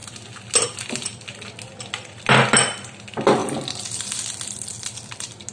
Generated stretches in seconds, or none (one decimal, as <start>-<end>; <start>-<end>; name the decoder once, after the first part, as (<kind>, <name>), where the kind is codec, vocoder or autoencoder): none